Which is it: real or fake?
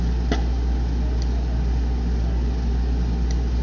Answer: real